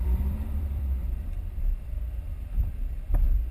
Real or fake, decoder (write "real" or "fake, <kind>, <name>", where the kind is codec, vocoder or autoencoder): fake, vocoder, BigVGAN v2